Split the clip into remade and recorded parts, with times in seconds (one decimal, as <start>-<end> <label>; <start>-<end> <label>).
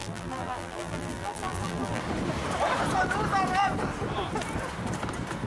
0.0-2.0 remade; 2.0-5.5 recorded